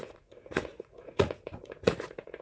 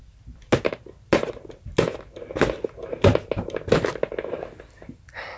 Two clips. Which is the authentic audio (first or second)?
second